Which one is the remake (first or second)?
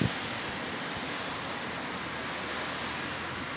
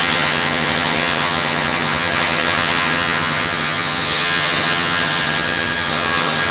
second